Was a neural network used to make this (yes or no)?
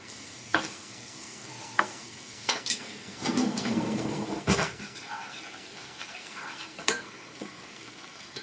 yes